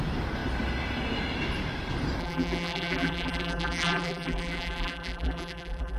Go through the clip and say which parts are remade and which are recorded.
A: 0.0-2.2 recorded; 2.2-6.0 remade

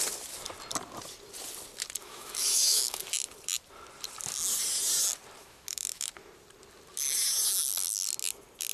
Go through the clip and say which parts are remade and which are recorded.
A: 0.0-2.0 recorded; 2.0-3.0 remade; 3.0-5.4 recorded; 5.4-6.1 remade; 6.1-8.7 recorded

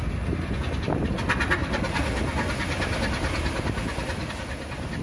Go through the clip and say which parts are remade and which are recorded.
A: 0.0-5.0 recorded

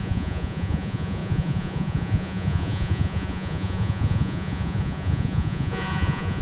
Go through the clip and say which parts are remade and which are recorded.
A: 0.0-6.4 remade